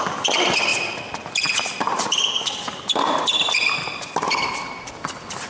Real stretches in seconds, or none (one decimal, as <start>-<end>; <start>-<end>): 0.0-5.5